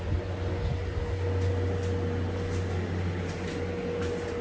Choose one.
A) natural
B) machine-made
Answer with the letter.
A